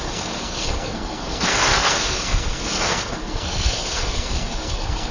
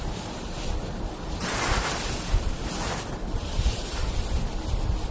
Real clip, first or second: second